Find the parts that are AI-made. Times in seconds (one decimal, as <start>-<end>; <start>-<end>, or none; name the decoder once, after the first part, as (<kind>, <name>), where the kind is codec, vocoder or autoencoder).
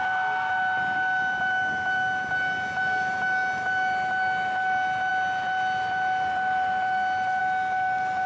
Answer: none